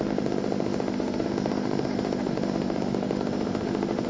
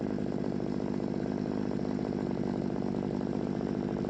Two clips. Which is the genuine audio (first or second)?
second